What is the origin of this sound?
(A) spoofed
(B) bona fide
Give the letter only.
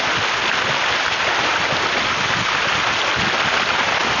B